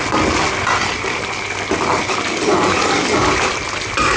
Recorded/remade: recorded